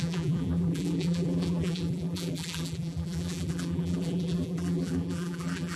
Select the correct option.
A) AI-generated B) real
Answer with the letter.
A